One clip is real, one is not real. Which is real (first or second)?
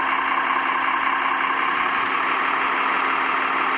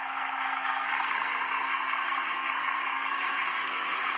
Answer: first